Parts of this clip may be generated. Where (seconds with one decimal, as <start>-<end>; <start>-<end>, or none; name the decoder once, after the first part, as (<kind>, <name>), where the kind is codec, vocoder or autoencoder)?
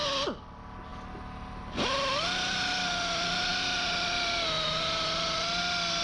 none